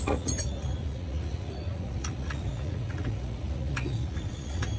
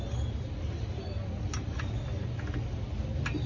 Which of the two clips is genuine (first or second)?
second